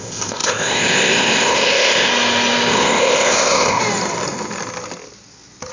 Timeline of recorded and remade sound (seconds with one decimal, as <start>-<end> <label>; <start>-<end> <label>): 0.0-2.1 remade; 2.1-2.7 recorded; 2.7-3.8 remade; 3.8-5.7 recorded